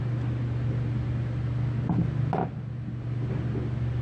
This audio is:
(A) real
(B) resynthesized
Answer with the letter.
A